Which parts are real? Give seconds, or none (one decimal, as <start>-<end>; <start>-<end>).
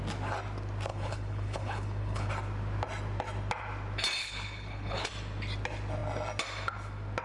0.0-0.9; 2.3-4.2; 5.1-7.2